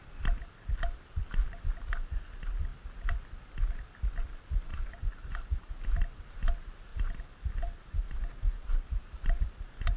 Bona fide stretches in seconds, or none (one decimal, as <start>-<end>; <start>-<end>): 0.0-4.7; 5.7-6.9; 9.5-10.0